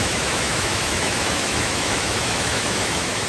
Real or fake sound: fake